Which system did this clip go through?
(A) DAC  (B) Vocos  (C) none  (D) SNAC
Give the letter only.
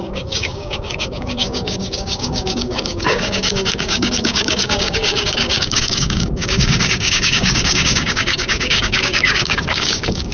A